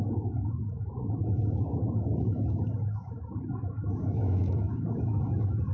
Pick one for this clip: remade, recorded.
remade